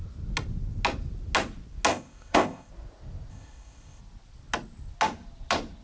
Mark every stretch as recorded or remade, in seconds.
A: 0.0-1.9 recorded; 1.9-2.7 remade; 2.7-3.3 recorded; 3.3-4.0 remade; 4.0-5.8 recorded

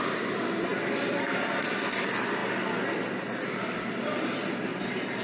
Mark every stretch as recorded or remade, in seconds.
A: 0.0-5.2 recorded

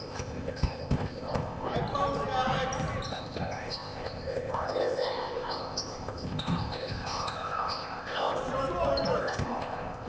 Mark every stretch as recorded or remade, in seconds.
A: 0.0-1.7 remade; 1.7-3.1 recorded; 3.1-8.4 remade; 8.4-9.2 recorded; 9.2-10.1 remade

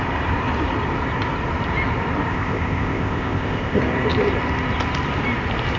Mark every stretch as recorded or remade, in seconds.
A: 0.0-2.3 recorded; 2.3-3.8 remade; 3.8-5.8 recorded

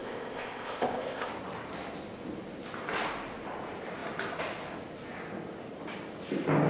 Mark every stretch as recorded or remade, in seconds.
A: 0.0-1.3 remade; 1.3-6.7 recorded

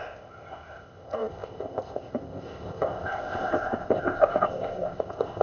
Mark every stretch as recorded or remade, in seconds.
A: 0.0-5.4 remade